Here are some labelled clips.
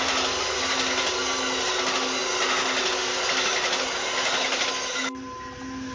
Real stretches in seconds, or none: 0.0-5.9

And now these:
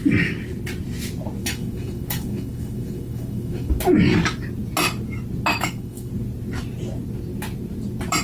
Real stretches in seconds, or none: 0.0-1.4; 3.7-5.5; 6.1-8.2

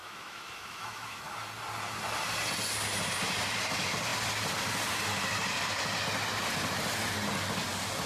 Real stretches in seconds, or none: 1.2-8.1

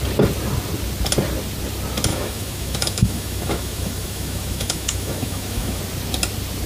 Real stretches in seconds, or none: 0.0-2.1; 5.8-6.7

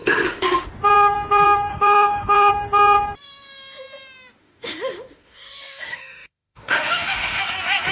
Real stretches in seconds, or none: 0.7-1.7; 2.5-4.4; 7.4-7.9

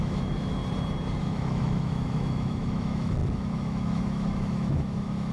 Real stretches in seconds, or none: 0.6-1.2

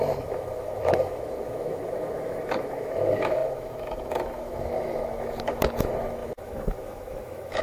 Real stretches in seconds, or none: none